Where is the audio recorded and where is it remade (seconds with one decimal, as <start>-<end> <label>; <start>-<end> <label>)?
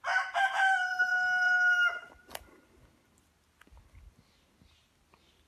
0.0-5.5 recorded